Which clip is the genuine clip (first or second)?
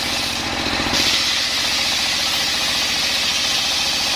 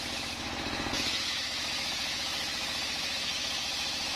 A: first